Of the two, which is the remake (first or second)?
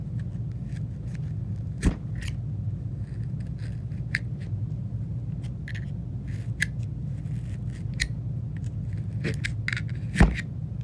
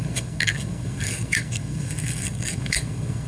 second